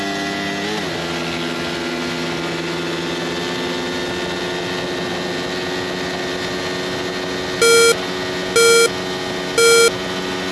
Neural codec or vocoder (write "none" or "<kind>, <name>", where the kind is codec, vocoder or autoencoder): none